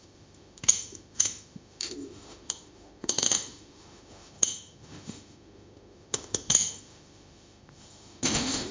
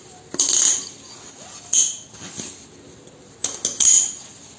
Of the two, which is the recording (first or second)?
second